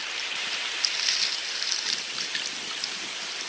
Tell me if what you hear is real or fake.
real